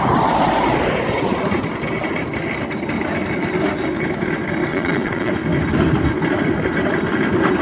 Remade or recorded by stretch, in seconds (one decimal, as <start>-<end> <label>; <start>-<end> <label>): 0.0-4.7 recorded; 4.7-5.3 remade; 5.3-7.6 recorded